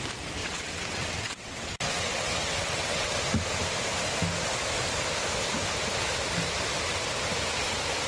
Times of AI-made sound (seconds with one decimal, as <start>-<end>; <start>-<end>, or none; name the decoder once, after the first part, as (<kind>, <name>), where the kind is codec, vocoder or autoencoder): 0.4-3.2 (vocoder, WaveNeXt)